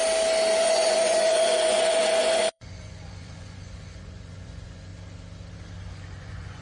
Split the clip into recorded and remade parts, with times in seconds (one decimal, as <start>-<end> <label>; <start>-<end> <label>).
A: 0.0-0.6 recorded; 0.6-4.9 remade; 4.9-5.9 recorded; 5.9-6.6 remade